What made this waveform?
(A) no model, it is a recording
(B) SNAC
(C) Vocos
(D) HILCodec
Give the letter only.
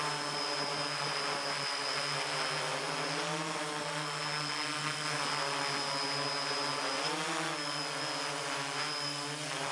A